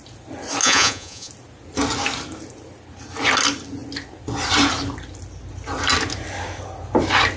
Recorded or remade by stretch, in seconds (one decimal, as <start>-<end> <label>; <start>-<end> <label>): 0.0-0.6 recorded; 0.6-1.3 remade; 1.3-7.4 recorded